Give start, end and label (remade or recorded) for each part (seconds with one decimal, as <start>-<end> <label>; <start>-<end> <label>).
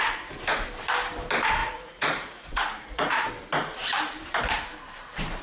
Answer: 0.0-1.6 recorded; 1.6-3.3 remade; 3.3-5.4 recorded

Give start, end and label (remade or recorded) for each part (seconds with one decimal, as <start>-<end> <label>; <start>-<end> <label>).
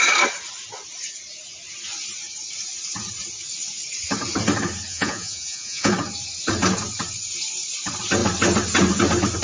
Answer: 0.0-4.9 recorded; 4.9-5.9 remade; 5.9-9.4 recorded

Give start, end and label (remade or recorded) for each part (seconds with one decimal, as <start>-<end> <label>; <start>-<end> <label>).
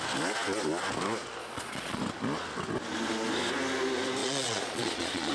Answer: 0.0-1.4 recorded; 1.4-2.0 remade; 2.0-4.2 recorded; 4.2-5.3 remade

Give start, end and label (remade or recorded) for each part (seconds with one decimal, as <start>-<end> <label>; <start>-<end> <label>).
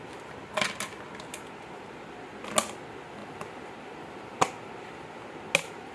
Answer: 0.0-5.9 recorded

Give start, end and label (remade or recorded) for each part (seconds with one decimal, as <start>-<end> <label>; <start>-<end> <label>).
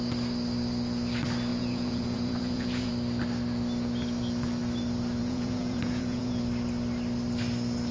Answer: 0.0-1.5 recorded; 1.5-2.9 remade; 2.9-5.2 recorded; 5.2-6.4 remade; 6.4-7.9 recorded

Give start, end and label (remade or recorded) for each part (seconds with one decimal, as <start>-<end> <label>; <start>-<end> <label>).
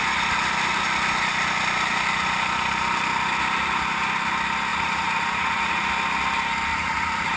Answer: 0.0-4.7 recorded; 4.7-5.9 remade; 5.9-6.7 recorded; 6.7-7.4 remade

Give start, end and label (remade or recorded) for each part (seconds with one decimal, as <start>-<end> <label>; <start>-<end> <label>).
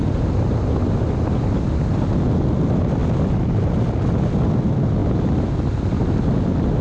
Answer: 0.0-6.8 recorded